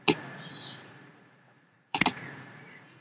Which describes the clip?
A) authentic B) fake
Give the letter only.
B